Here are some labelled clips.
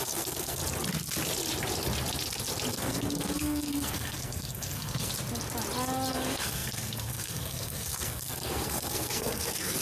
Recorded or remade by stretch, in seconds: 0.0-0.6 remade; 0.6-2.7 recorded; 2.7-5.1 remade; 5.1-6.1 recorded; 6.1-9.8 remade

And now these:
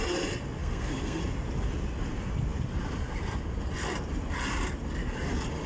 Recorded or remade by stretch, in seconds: 0.0-0.6 recorded; 0.6-1.2 remade; 1.2-5.7 recorded

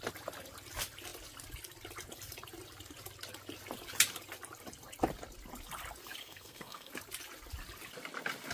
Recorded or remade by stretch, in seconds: 0.0-6.2 recorded; 6.2-6.9 remade; 6.9-8.5 recorded

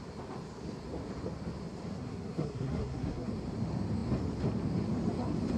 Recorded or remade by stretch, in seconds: 0.0-1.9 recorded; 1.9-3.3 remade; 3.3-5.6 recorded

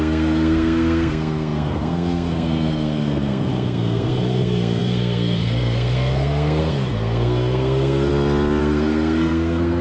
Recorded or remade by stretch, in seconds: 0.0-8.1 remade; 8.1-8.6 recorded; 8.6-9.8 remade

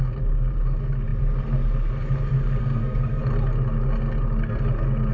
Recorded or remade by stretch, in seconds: 0.0-2.6 recorded; 2.6-3.2 remade; 3.2-5.1 recorded

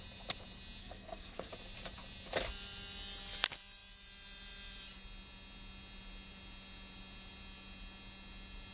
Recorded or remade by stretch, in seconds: 0.0-0.8 recorded; 0.8-1.5 remade; 1.5-8.7 recorded